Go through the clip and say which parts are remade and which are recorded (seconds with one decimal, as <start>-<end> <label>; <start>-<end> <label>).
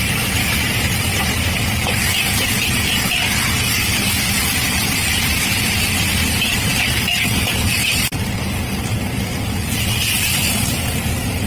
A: 0.0-1.1 remade; 1.1-2.5 recorded; 2.5-6.7 remade; 6.7-7.4 recorded; 7.4-11.5 remade